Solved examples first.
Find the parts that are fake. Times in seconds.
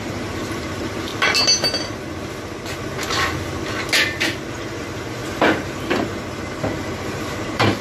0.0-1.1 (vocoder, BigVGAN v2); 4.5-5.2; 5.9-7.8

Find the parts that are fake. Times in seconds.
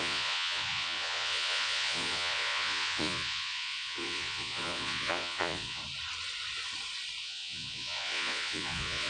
0.0-5.8 (vocoder, Vocos); 7.2-9.1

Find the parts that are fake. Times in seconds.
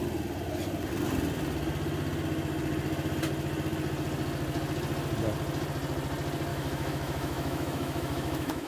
6.5-8.7 (autoencoder, DAC-VAE)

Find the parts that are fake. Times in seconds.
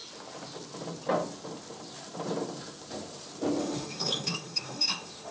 3.6-5.3 (autoencoder, DAC-VAE)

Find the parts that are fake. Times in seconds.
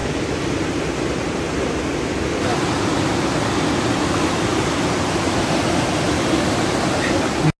none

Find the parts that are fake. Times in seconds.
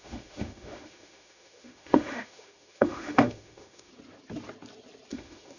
0.0-3.9 (autoencoder, DAC-VAE); 5.1-5.6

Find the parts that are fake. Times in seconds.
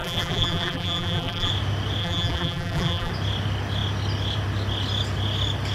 0.0-1.5 (vocoder, BigVGAN v2); 2.0-3.1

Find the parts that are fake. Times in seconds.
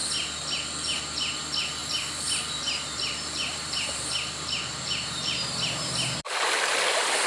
1.8-6.2 (vocoder, BigVGAN v2)